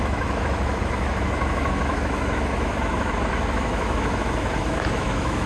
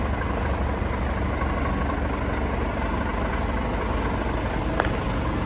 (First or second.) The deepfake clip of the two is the first